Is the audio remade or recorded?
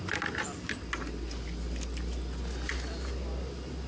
recorded